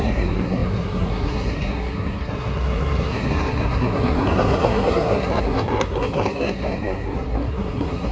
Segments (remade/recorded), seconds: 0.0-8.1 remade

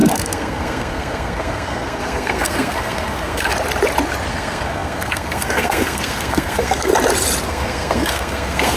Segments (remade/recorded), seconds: 0.0-3.5 remade; 3.5-4.3 recorded; 4.3-6.9 remade; 6.9-7.5 recorded; 7.5-8.8 remade

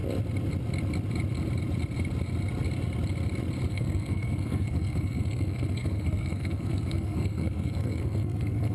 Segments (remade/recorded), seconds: 0.0-3.7 recorded; 3.7-8.7 remade

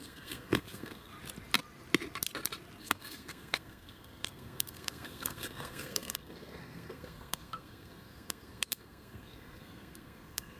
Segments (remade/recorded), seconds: 0.0-1.1 remade; 1.1-2.8 recorded; 2.8-10.6 remade